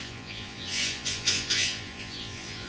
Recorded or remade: remade